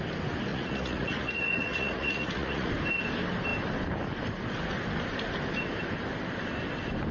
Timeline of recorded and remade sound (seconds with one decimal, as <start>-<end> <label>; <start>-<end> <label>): 0.0-0.5 recorded; 0.5-2.7 remade; 2.7-7.1 recorded